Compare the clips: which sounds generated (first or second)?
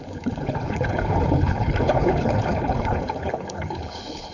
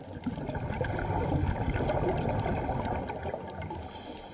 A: first